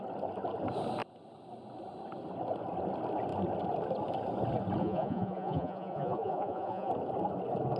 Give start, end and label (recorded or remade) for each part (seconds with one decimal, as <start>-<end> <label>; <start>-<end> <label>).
0.0-4.8 recorded; 4.8-6.9 remade; 6.9-7.8 recorded